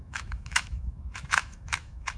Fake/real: fake